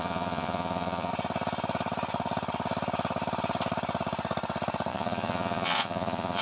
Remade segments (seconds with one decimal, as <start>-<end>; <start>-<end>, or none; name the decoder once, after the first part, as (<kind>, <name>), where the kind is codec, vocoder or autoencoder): 0.0-1.1 (vocoder, Vocos); 4.9-6.4